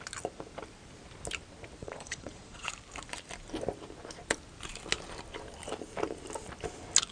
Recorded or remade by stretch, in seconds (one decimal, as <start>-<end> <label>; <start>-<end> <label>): 0.0-1.8 recorded; 1.8-2.7 remade; 2.7-7.1 recorded